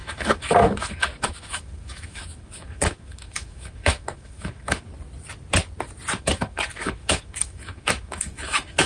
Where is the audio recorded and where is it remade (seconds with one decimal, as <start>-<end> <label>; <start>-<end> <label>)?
0.0-4.9 remade; 4.9-6.2 recorded; 6.2-8.9 remade